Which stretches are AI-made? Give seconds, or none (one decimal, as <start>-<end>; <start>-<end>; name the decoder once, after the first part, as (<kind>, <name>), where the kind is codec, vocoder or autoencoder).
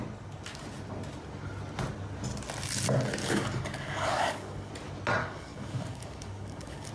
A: 3.2-4.7 (codec, DAC); 5.2-6.9